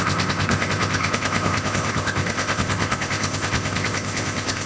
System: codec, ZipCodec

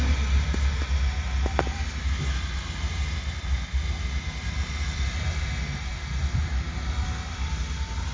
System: none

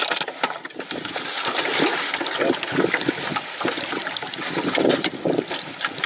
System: none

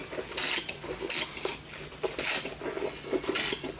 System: none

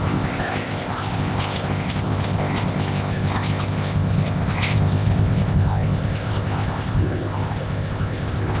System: codec, ZipCodec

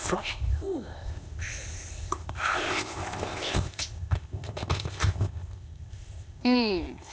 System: codec, ZipCodec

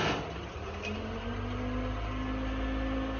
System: none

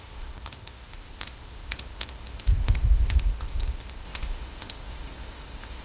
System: codec, ZipCodec